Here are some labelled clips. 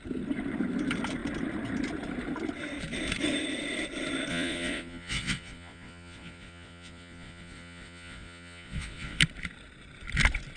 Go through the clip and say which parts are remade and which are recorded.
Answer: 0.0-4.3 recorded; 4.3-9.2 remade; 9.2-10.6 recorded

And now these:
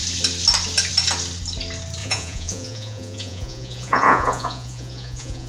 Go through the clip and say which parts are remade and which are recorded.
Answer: 0.0-2.0 recorded; 2.0-5.5 remade

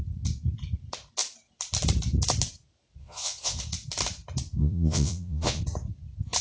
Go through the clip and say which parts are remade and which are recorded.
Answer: 0.0-3.0 recorded; 3.0-3.6 remade; 3.6-4.6 recorded; 4.6-5.6 remade; 5.6-6.4 recorded